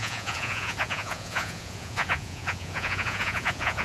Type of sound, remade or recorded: remade